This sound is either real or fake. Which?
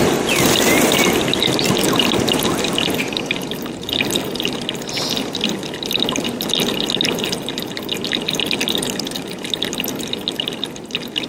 real